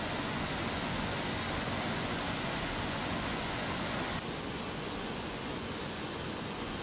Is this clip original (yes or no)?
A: no